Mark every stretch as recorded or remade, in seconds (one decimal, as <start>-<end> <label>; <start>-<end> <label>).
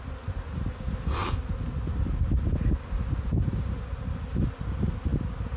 0.0-5.6 recorded